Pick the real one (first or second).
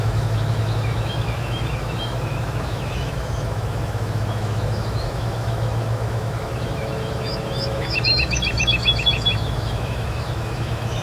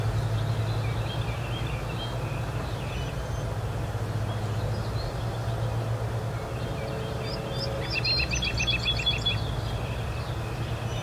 second